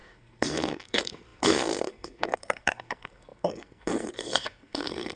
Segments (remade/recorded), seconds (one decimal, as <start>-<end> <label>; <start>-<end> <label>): 0.0-5.2 remade